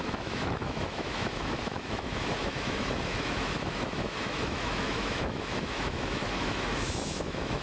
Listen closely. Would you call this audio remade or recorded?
remade